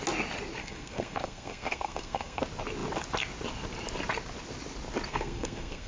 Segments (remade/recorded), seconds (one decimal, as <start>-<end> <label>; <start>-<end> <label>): 0.0-0.6 recorded; 0.6-2.4 remade; 2.4-5.1 recorded; 5.1-5.9 remade